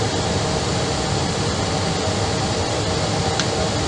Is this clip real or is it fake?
real